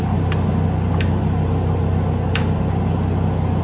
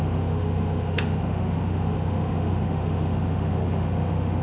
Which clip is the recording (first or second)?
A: first